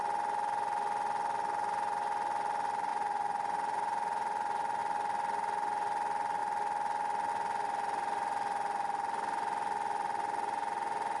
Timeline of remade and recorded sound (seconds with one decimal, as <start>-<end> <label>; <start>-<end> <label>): 0.0-2.9 recorded; 2.9-4.8 remade; 4.8-11.2 recorded